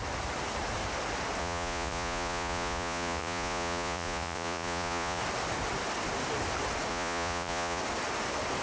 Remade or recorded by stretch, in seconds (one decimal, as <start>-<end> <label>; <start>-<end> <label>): 0.0-1.4 recorded; 1.4-5.2 remade; 5.2-6.9 recorded; 6.9-7.8 remade; 7.8-8.6 recorded